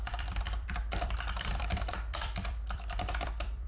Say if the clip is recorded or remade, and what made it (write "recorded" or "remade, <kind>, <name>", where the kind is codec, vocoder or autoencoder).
remade, vocoder, BigVGAN v2